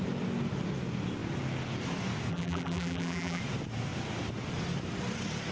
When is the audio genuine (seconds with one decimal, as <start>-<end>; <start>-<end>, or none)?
0.0-2.3; 3.4-5.5